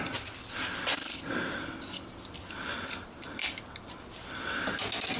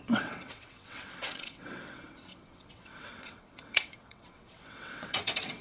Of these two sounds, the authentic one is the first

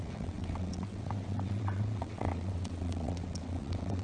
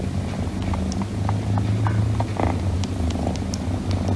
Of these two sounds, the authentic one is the second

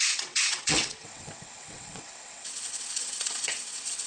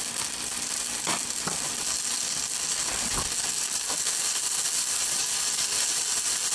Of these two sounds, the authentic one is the second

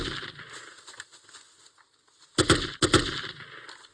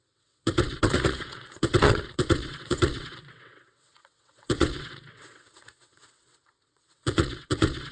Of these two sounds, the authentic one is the first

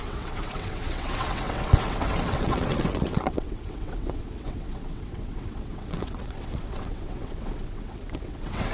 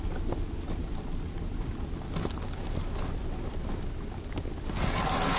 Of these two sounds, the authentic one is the second